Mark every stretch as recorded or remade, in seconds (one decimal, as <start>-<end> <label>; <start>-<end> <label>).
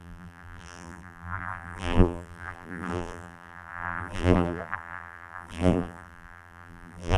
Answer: 0.0-7.2 remade